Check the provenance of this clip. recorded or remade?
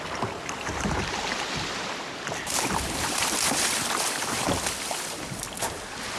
remade